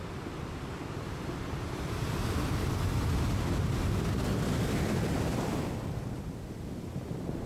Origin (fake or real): real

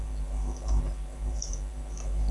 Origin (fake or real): fake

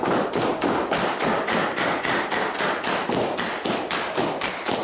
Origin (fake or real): real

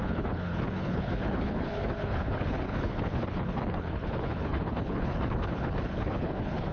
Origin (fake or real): fake